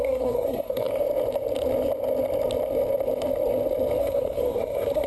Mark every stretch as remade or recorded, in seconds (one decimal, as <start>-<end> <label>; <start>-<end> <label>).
0.0-0.9 remade; 0.9-4.0 recorded; 4.0-5.1 remade